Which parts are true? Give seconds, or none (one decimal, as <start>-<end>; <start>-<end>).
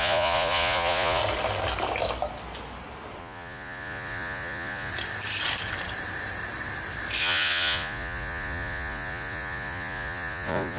1.2-3.2; 4.9-7.2